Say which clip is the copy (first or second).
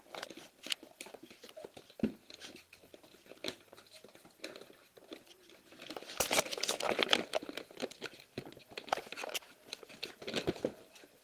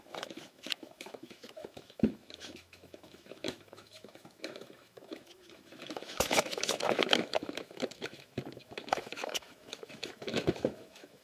second